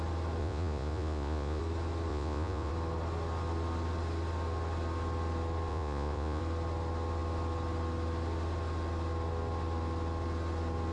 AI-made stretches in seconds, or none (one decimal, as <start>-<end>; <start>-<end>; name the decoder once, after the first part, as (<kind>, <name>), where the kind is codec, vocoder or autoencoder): 0.4-1.6 (vocoder, Vocos); 2.1-2.7; 5.7-6.4